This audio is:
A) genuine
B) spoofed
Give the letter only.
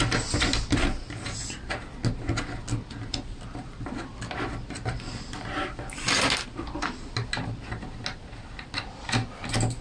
A